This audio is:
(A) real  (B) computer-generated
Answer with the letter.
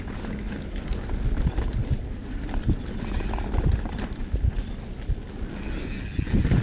A